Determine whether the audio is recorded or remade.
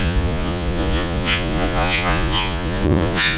remade